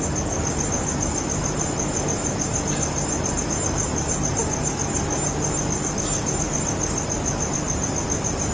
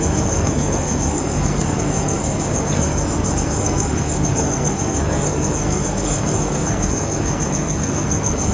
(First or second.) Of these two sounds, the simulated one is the second